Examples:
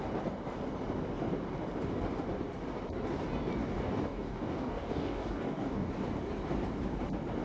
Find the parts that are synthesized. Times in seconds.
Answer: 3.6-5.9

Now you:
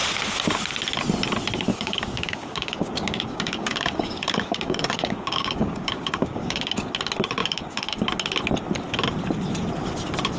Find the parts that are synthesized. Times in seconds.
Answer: 1.7-6.9; 7.4-8.0

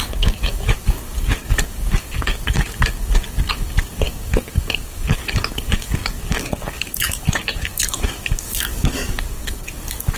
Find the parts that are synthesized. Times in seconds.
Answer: 0.0-10.2

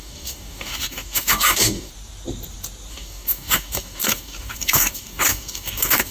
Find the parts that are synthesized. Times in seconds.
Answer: 0.0-1.9; 2.9-6.1